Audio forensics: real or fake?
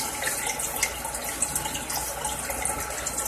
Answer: real